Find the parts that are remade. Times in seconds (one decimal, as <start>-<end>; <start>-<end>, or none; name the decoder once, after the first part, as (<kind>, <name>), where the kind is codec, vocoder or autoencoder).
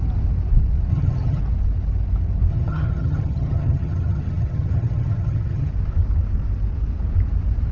0.9-1.4 (vocoder, HiFi-GAN); 2.5-5.7